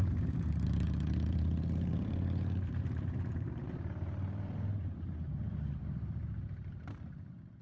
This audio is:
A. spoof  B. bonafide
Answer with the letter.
A